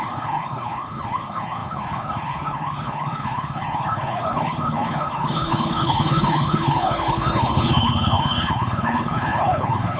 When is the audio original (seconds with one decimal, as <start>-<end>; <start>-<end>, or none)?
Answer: none